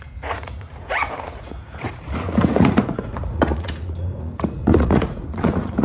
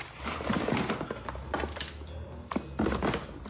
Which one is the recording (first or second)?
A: second